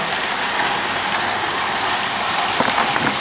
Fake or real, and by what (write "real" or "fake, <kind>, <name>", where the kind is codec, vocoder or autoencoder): real